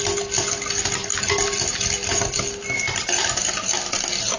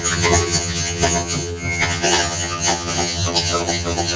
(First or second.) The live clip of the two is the first